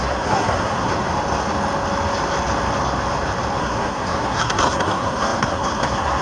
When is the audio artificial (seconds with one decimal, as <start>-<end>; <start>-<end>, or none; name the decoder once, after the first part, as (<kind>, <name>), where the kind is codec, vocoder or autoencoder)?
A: 0.0-0.9 (codec, SNAC); 3.6-6.2